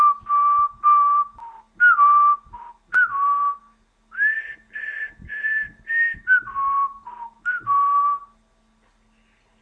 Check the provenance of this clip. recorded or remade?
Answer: recorded